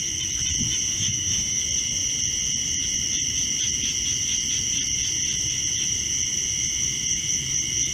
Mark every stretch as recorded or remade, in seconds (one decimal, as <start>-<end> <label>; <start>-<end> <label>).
0.0-0.9 recorded; 0.9-1.6 remade; 1.6-7.9 recorded